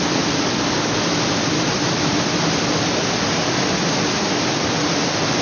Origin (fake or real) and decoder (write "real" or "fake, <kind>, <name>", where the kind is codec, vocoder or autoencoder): real